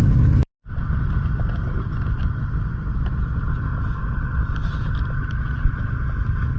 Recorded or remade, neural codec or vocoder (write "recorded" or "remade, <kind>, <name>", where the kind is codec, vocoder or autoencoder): recorded